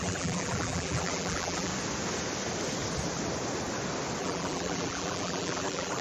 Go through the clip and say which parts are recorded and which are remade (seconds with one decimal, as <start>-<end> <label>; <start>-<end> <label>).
0.0-1.7 remade; 1.7-4.2 recorded; 4.2-6.0 remade